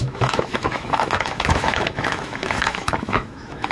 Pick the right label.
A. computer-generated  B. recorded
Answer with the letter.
A